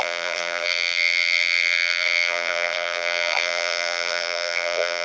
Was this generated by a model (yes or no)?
yes